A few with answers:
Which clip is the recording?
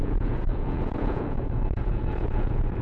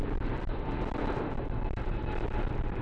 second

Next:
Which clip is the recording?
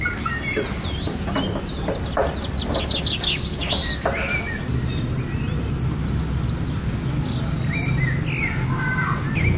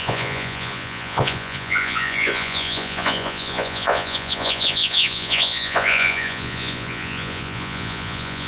first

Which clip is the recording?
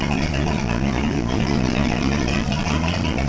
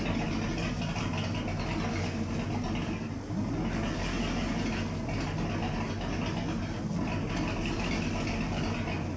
second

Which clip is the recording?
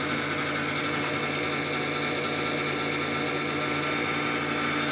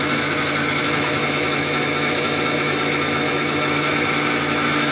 first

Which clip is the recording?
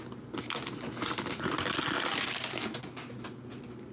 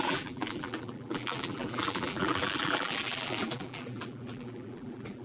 first